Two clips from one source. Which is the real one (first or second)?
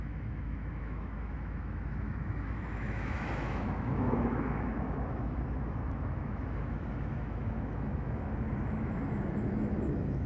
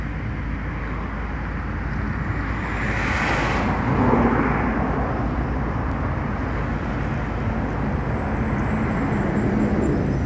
second